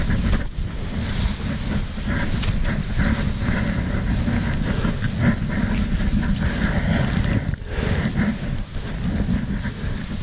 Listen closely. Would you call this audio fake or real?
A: real